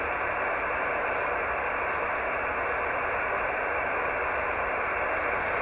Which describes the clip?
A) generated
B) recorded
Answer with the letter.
B